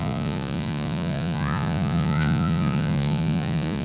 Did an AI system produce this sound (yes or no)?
yes